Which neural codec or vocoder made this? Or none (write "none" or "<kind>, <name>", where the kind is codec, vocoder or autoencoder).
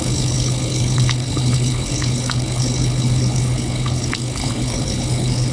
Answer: codec, HILCodec